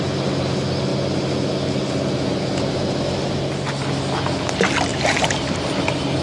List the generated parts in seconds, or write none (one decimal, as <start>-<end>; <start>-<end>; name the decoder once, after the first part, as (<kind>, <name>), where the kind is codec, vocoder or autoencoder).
4.9-5.4 (vocoder, BigVGAN v2)